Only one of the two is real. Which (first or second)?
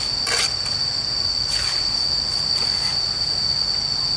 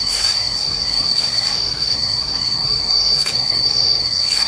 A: first